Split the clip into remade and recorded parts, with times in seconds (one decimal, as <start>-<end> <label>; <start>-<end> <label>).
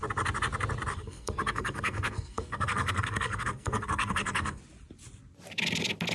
0.0-0.9 recorded; 0.9-4.6 remade; 4.6-6.1 recorded